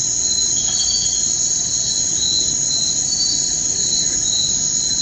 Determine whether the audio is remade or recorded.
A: recorded